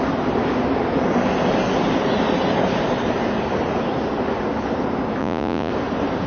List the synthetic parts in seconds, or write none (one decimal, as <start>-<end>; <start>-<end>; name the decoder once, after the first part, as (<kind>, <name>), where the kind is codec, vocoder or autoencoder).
5.2-5.7 (vocoder, Vocos)